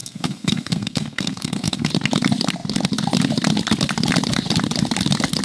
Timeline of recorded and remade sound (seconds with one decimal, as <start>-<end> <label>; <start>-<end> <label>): 0.0-1.9 remade; 1.9-5.4 recorded